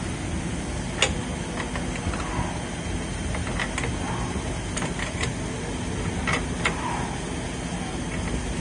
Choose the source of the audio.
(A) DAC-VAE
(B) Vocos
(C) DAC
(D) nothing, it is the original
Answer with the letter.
D